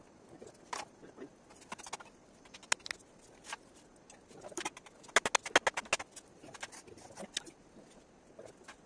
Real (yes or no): yes